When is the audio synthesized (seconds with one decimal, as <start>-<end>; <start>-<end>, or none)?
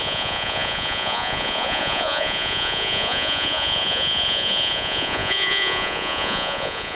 0.0-6.9